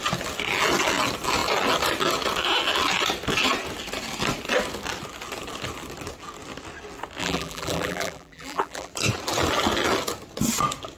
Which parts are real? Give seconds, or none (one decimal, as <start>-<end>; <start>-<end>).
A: 0.0-7.2; 8.9-11.0